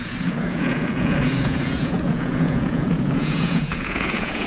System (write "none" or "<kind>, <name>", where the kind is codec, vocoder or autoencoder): vocoder, Vocos